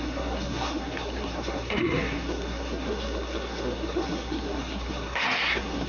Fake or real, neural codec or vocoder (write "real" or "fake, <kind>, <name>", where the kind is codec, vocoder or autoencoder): fake, codec, SNAC